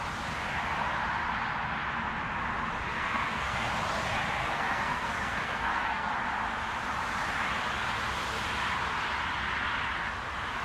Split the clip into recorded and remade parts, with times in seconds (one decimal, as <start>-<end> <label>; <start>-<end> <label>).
0.0-2.9 recorded; 2.9-3.7 remade; 3.7-4.4 recorded; 4.4-6.1 remade; 6.1-10.6 recorded